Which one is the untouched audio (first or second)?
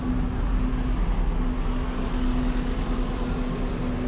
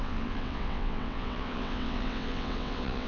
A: first